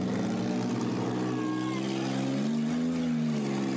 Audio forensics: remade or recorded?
recorded